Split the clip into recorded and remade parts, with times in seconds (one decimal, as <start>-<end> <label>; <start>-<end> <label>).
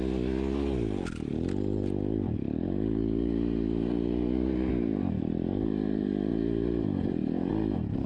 0.0-2.6 recorded; 2.6-4.7 remade; 4.7-6.3 recorded; 6.3-7.5 remade; 7.5-8.1 recorded